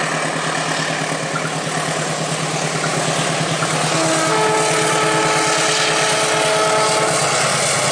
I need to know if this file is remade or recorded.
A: recorded